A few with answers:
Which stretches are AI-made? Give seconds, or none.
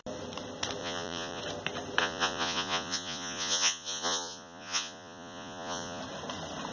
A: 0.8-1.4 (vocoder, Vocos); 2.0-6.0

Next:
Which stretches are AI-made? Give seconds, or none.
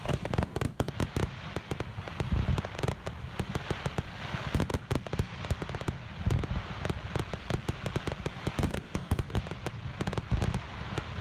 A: 0.0-0.9 (codec, DAC); 8.7-9.4